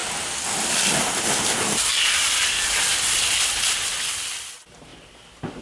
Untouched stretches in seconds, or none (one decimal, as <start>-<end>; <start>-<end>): 0.0-5.6